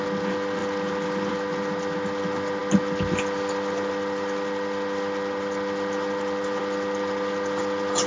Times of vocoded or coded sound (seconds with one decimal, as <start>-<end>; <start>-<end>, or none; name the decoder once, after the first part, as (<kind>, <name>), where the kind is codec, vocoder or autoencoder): none